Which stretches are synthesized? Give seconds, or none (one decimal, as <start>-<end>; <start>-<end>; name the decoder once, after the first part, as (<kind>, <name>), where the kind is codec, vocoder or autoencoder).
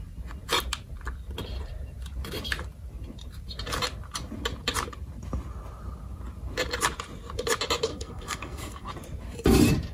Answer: 7.9-8.9 (codec, SNAC)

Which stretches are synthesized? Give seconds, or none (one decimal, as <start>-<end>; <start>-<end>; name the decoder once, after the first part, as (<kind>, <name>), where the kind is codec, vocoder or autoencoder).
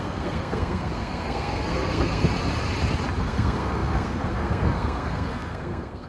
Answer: 0.0-2.3 (codec, SNAC); 3.2-6.1